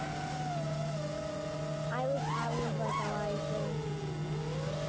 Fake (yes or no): no